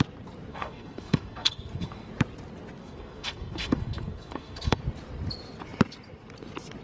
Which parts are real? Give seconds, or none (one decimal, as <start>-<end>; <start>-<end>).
0.0-0.5; 2.1-2.8; 4.8-6.8